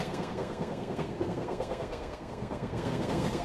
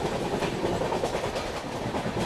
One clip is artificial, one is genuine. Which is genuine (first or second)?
second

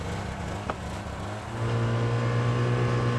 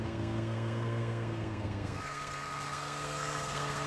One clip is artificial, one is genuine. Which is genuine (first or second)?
first